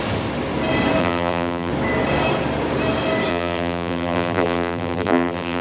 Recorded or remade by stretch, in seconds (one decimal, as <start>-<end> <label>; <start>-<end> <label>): 0.0-1.0 recorded; 1.0-1.7 remade; 1.7-3.3 recorded; 3.3-5.6 remade